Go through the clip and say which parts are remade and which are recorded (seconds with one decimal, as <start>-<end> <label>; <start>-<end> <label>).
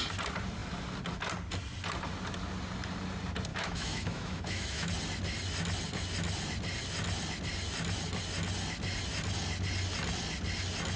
0.0-3.5 recorded; 3.5-4.9 remade; 4.9-11.0 recorded